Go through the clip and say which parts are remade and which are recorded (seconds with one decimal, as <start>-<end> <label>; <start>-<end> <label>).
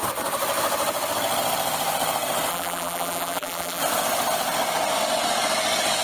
0.0-2.5 recorded; 2.5-3.8 remade; 3.8-6.0 recorded